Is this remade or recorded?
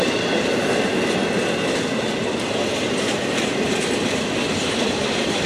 recorded